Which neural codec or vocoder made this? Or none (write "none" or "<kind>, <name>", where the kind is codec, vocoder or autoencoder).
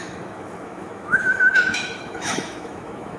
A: autoencoder, DAC-VAE